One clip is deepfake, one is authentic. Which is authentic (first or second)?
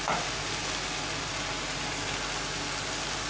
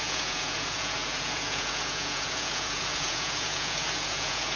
first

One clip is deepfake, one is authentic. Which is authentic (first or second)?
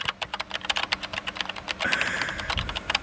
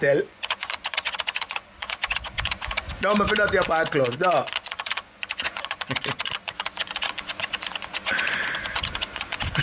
first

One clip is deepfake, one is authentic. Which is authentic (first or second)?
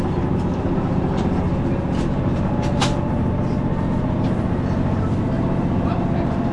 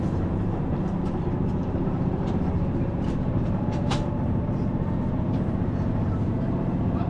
first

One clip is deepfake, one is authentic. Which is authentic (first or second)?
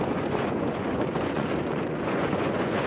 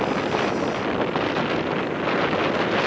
second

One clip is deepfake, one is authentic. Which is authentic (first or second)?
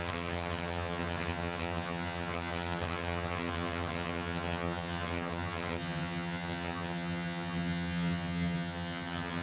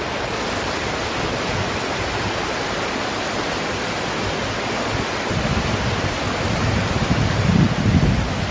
second